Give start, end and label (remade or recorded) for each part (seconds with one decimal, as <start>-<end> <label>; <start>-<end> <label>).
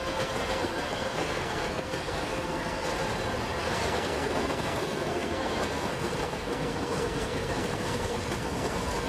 0.0-2.9 remade; 2.9-3.6 recorded; 3.6-9.1 remade